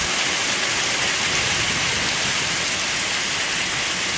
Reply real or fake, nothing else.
real